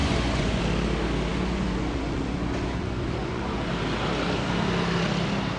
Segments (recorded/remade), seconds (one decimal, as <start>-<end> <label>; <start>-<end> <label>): 0.0-0.6 remade; 0.6-1.3 recorded; 1.3-3.7 remade; 3.7-5.6 recorded